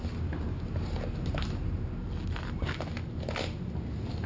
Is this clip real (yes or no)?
yes